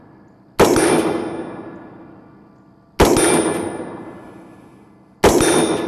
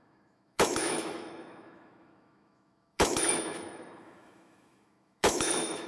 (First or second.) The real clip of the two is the first